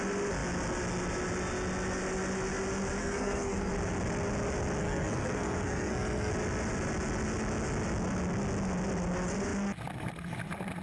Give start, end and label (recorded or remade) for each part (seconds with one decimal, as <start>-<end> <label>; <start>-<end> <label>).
0.0-3.0 recorded; 3.0-3.7 remade; 3.7-4.8 recorded; 4.8-6.3 remade; 6.3-10.8 recorded